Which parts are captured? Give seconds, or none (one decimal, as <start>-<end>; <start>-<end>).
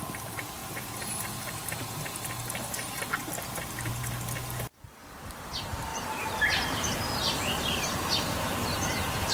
0.6-3.4; 3.9-5.5